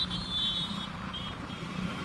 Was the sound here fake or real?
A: fake